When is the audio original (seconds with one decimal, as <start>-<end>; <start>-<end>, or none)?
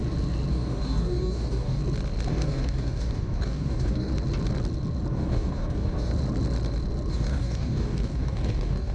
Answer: 0.0-0.5; 1.8-2.3; 4.1-5.1; 6.1-7.1